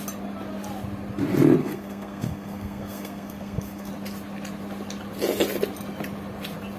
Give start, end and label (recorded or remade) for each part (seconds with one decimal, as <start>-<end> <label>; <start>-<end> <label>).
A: 0.0-1.6 recorded; 1.6-3.9 remade; 3.9-6.8 recorded